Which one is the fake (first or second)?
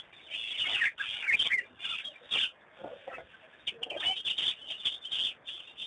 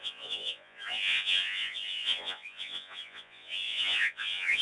second